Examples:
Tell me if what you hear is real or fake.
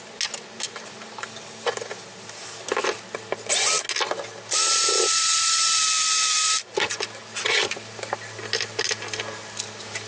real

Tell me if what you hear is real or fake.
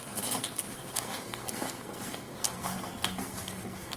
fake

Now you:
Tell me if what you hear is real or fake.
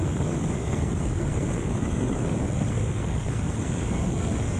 fake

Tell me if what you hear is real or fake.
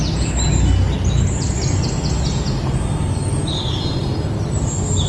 real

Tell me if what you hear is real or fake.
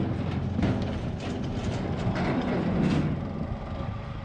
real